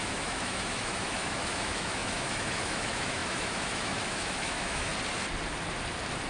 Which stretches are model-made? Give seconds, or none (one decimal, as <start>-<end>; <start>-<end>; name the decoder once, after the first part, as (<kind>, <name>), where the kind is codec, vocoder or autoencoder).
0.0-4.9 (autoencoder, DAC-VAE)